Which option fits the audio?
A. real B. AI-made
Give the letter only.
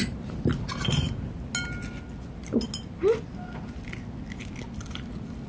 A